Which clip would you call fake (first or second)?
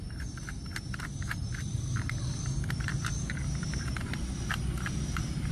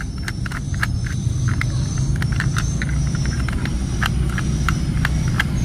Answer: first